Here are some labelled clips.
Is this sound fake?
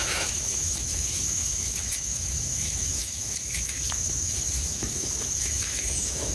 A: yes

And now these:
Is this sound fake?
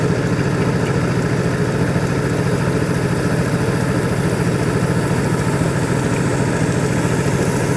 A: no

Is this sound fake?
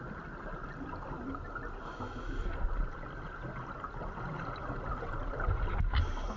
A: no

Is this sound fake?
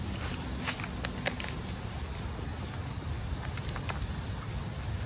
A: no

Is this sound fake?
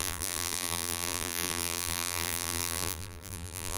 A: yes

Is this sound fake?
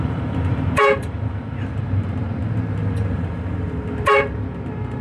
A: yes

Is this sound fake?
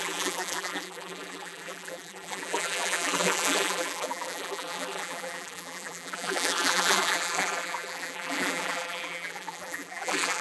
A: yes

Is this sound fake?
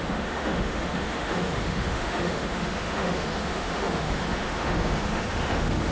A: yes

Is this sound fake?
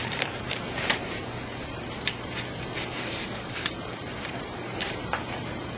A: yes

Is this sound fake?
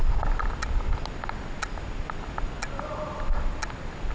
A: no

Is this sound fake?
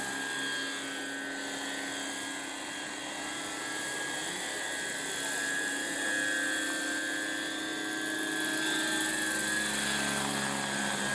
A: no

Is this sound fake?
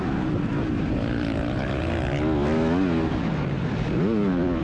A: no